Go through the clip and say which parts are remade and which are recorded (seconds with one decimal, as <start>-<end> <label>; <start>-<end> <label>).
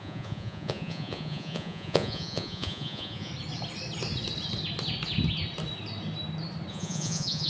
0.0-3.3 remade; 3.3-6.7 recorded; 6.7-7.5 remade